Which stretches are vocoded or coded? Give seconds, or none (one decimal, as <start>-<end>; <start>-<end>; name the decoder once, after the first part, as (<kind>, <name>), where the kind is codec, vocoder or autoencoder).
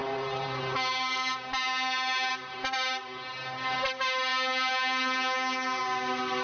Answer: 0.0-2.3 (vocoder, BigVGAN v2); 4.3-5.8